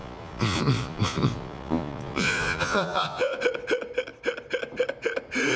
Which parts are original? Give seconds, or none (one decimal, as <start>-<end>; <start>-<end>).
3.4-5.6